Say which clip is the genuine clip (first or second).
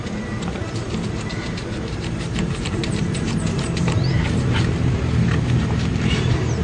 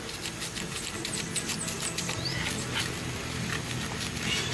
second